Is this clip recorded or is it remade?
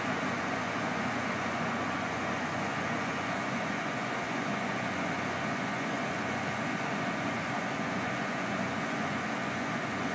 remade